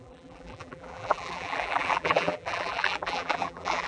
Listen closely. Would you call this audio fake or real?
fake